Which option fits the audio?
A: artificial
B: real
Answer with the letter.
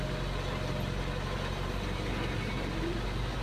B